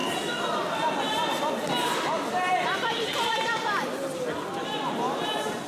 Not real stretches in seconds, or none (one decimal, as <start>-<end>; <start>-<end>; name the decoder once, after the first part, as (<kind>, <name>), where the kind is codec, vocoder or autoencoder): none